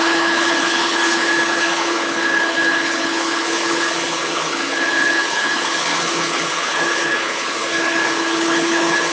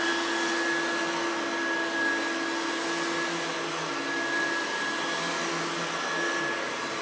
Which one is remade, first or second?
first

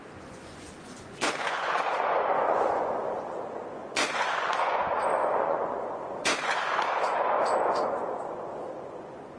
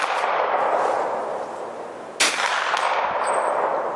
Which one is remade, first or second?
first